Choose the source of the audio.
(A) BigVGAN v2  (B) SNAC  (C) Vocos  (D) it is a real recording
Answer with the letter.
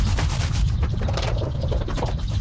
A